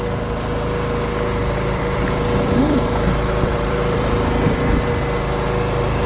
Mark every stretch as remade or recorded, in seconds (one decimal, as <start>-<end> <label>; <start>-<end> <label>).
0.0-1.4 recorded; 1.4-4.6 remade; 4.6-6.1 recorded